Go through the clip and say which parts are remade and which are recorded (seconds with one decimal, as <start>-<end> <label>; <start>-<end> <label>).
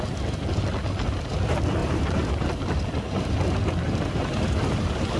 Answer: 0.0-1.8 recorded; 1.8-5.2 remade